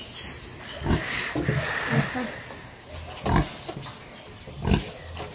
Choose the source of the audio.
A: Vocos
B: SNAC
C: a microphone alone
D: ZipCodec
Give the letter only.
C